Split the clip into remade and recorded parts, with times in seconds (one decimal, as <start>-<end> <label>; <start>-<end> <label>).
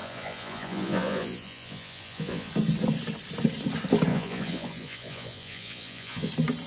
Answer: 0.0-2.5 remade; 2.5-4.1 recorded; 4.1-6.3 remade; 6.3-6.7 recorded